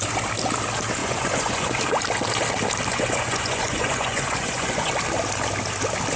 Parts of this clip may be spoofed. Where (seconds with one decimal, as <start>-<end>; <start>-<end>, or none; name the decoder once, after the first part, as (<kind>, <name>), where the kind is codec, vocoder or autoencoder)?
1.0-1.8 (vocoder, Vocos); 2.9-4.9